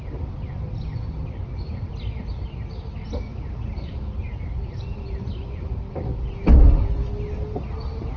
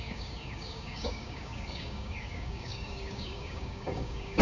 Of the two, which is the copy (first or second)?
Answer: second